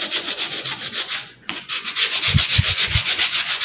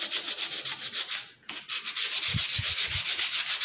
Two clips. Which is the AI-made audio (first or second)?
first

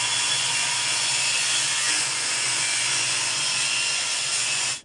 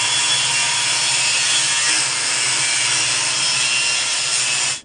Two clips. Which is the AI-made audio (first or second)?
first